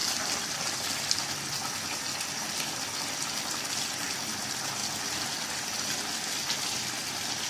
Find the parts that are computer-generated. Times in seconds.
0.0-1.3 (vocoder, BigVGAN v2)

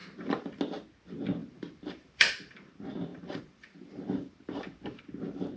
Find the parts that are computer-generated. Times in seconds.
0.0-0.6 (vocoder, BigVGAN v2); 1.4-2.7; 3.1-5.0

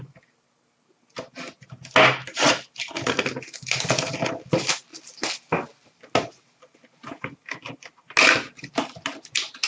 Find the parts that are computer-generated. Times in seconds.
none

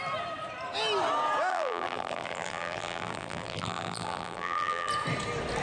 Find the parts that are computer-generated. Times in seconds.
1.5-4.9 (vocoder, BigVGAN v2)

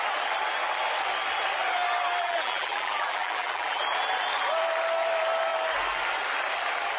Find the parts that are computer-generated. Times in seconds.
2.2-3.8 (vocoder, BigVGAN v2)